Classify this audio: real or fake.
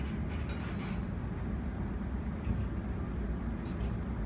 real